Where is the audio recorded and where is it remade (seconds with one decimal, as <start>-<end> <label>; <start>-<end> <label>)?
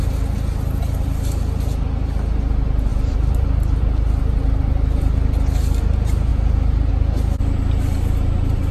0.0-2.9 recorded; 2.9-3.8 remade; 3.8-6.3 recorded; 6.3-6.9 remade; 6.9-8.7 recorded